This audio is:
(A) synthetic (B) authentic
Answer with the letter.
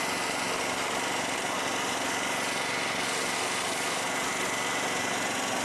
B